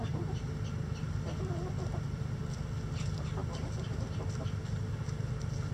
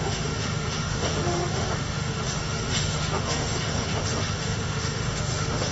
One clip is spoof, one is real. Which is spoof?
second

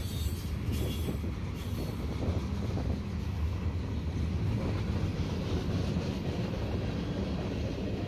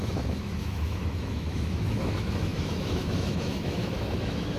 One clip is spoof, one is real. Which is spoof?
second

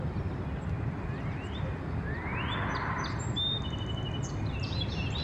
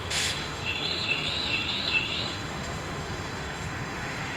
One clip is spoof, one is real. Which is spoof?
second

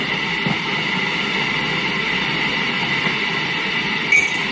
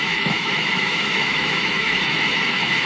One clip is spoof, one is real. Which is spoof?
second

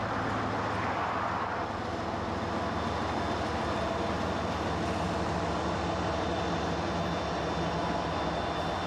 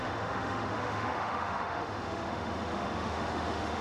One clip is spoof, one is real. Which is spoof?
second